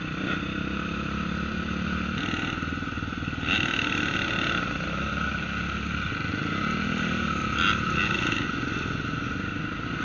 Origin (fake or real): real